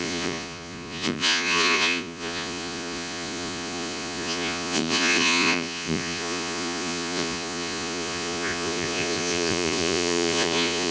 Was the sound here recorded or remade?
remade